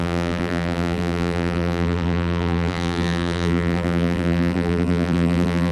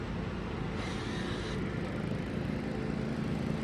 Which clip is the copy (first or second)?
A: first